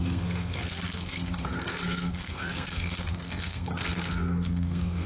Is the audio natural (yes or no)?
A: no